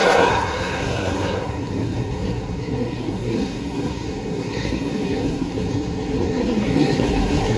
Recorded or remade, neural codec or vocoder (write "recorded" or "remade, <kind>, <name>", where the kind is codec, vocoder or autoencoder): remade, codec, SNAC